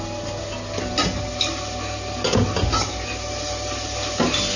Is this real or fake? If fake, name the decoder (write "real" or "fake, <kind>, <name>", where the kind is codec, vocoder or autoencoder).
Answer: real